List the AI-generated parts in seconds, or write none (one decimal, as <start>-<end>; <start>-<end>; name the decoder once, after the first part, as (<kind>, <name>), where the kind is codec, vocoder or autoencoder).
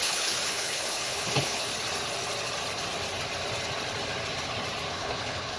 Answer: 0.0-1.7 (codec, HILCodec); 4.9-5.6